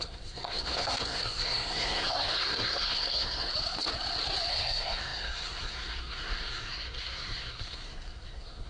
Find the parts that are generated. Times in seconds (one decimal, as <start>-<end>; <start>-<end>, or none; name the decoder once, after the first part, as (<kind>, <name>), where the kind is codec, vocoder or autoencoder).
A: 0.0-3.5 (codec, SNAC); 4.5-8.7